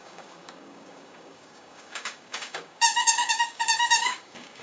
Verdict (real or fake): fake